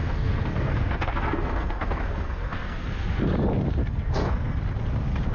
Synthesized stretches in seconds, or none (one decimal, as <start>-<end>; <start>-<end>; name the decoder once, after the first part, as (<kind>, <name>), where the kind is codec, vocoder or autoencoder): 0.0-3.2 (codec, SNAC); 3.8-4.6